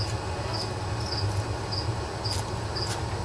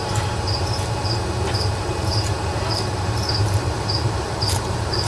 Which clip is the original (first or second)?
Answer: first